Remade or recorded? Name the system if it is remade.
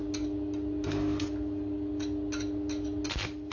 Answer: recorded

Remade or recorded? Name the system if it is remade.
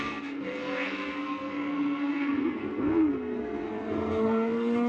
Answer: remade, codec, SNAC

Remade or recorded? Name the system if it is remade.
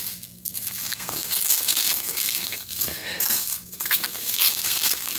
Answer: remade, codec, SNAC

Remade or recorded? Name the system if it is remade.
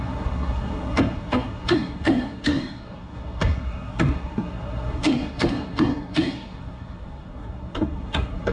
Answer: remade, codec, SNAC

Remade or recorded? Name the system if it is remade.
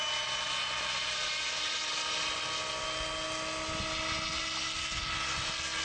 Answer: recorded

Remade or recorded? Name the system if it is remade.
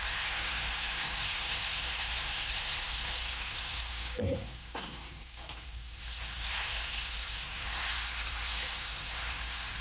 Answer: remade, codec, SNAC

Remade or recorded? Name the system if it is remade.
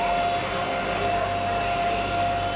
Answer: recorded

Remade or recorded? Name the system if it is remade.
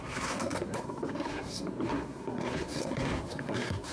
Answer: remade, codec, SNAC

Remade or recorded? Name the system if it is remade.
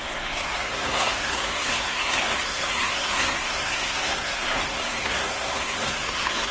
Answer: remade, codec, SNAC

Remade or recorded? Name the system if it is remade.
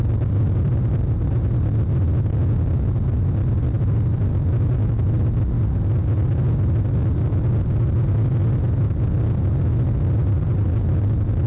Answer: recorded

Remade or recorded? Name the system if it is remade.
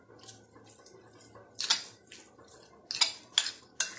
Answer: recorded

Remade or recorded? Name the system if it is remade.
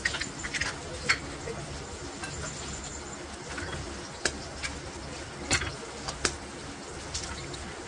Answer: recorded